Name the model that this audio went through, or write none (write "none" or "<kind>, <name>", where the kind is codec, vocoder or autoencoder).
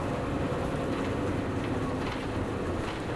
none